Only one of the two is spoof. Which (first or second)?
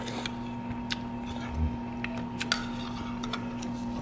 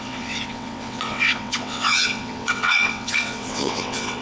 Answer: second